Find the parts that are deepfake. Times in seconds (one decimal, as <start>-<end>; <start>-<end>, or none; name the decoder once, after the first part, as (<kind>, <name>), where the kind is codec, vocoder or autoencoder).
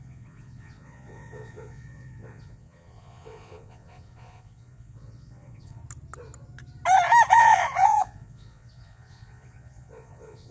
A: 0.0-5.8 (vocoder, Vocos); 7.3-10.5